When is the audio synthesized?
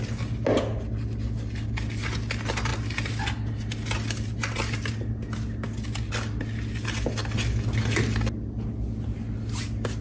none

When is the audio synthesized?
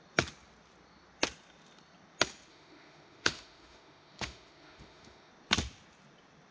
2.5-5.3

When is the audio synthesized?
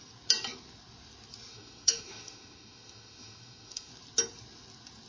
1.5-3.9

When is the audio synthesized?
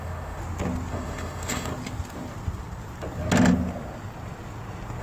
0.0-0.4; 0.9-1.7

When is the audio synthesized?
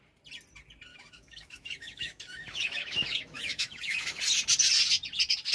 0.9-4.2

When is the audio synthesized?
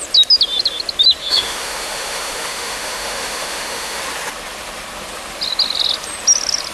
1.2-4.0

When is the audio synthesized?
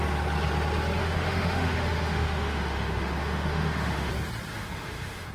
1.0-4.1; 4.5-5.3